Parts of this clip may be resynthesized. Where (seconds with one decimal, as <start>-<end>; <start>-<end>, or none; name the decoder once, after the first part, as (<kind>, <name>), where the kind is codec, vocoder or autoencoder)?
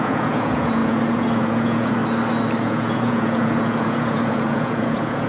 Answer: 0.0-2.0 (vocoder, Vocos); 2.6-5.3